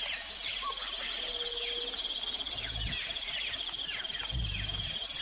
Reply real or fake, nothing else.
real